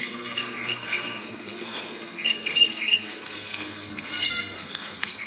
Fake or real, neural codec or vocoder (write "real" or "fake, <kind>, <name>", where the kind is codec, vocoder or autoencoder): fake, codec, SNAC